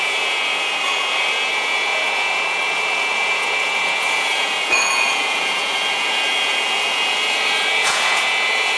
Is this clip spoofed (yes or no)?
yes